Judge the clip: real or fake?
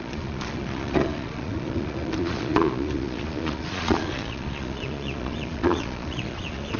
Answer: fake